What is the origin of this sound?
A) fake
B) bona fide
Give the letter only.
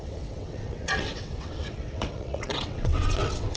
A